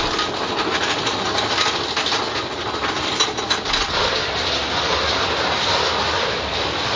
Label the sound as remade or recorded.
recorded